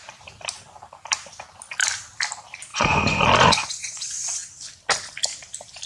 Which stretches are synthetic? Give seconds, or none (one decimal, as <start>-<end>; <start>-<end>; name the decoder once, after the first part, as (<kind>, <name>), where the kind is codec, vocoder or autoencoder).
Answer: 2.7-4.5 (vocoder, Vocos)

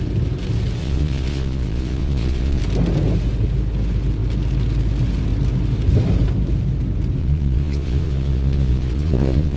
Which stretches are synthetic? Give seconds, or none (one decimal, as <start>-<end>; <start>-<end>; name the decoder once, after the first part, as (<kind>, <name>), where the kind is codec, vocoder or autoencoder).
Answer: 0.8-2.6 (vocoder, Vocos); 7.2-9.6

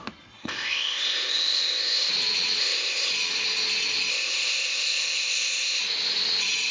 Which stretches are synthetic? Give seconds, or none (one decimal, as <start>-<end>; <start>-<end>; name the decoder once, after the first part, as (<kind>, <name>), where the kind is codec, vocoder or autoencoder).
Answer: 0.4-2.1 (codec, ZipCodec); 2.6-3.1; 4.1-5.8

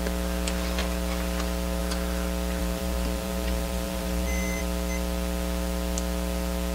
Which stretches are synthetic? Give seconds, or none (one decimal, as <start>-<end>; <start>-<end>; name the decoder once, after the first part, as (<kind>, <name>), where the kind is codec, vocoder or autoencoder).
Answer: 2.6-4.6 (vocoder, BigVGAN v2)

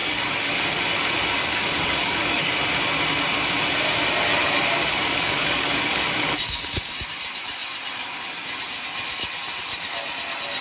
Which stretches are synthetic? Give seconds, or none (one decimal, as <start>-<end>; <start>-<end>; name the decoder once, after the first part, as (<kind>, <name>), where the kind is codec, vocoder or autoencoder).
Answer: 0.0-0.6 (codec, DAC); 1.4-2.5; 4.4-6.9

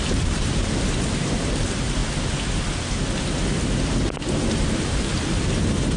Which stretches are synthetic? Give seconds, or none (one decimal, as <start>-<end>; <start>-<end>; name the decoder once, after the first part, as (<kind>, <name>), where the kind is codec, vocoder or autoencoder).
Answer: 0.0-2.0 (vocoder, BigVGAN v2); 4.3-5.1